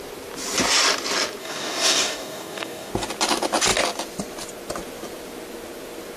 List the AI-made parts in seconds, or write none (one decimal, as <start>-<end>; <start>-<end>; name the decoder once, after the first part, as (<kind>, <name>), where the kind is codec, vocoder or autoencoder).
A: 1.4-2.9 (codec, DAC)